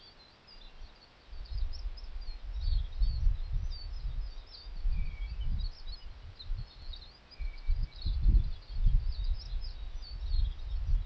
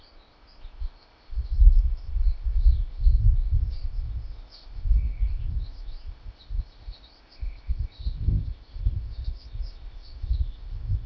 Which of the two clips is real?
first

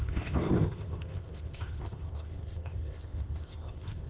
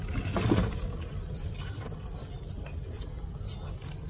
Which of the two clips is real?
second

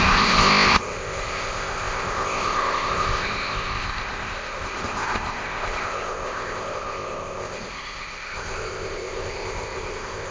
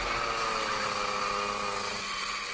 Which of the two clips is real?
second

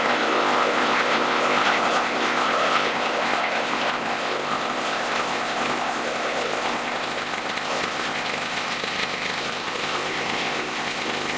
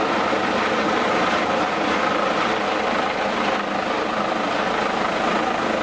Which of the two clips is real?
second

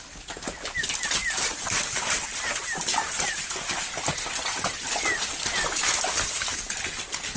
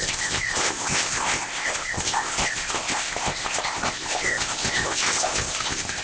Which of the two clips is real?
first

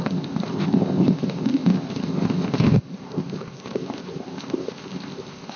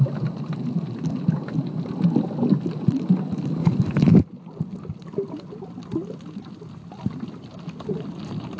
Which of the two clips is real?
second